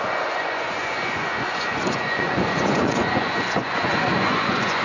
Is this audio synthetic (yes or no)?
yes